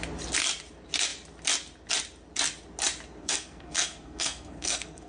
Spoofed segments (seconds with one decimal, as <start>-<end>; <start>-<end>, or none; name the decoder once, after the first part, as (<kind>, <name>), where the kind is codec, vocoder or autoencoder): 3.2-5.1 (codec, SNAC)